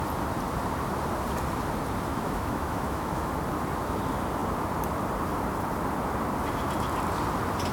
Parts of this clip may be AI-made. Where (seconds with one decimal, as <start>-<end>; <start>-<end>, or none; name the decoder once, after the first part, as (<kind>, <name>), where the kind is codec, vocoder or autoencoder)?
2.1-3.3 (autoencoder, DAC-VAE)